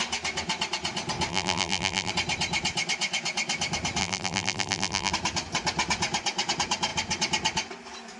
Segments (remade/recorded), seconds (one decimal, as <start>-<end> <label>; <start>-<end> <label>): 0.0-1.3 recorded; 1.3-2.1 remade; 2.1-4.0 recorded; 4.0-5.1 remade; 5.1-8.2 recorded